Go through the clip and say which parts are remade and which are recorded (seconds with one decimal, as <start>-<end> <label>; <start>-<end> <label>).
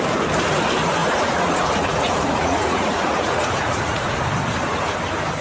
0.0-1.0 recorded; 1.0-4.2 remade; 4.2-5.4 recorded